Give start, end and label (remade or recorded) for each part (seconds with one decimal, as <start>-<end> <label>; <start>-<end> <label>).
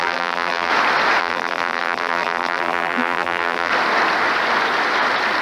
0.0-0.7 remade; 0.7-1.2 recorded; 1.2-3.7 remade; 3.7-5.4 recorded